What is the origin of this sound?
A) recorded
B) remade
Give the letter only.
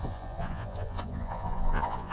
B